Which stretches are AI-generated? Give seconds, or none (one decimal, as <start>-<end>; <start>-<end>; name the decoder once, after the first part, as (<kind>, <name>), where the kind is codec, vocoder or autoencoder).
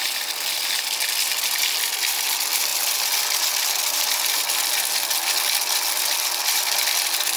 none